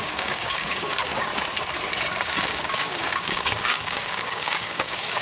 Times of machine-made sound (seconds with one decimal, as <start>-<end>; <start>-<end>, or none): 0.0-1.3; 2.1-5.2